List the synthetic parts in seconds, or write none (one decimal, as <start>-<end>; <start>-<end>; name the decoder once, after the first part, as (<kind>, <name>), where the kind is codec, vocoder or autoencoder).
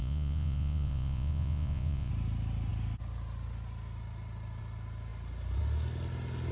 0.0-2.1 (vocoder, Vocos)